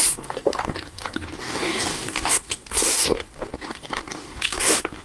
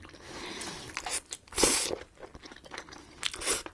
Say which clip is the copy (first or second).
first